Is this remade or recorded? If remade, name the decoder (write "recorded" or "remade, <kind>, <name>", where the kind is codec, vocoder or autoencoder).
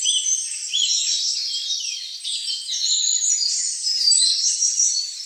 remade, vocoder, BigVGAN v2